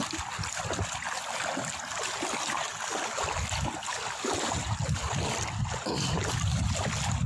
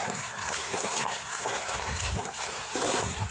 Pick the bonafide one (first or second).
first